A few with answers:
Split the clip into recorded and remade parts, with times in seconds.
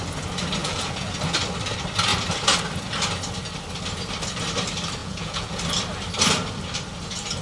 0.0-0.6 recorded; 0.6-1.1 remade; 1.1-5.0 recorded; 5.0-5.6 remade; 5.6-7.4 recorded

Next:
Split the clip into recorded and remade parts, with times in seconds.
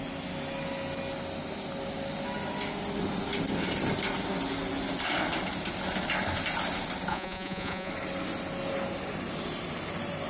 0.0-7.1 recorded; 7.1-7.9 remade; 7.9-10.3 recorded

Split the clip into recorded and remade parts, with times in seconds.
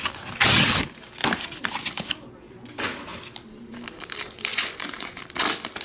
0.0-4.5 recorded; 4.5-5.2 remade; 5.2-5.8 recorded